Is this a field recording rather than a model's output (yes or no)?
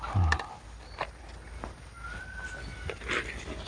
yes